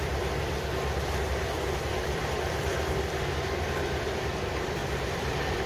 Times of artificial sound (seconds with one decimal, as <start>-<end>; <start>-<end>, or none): 0.0-2.7; 4.2-5.7